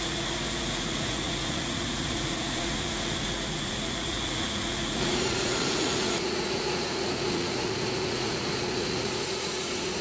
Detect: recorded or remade remade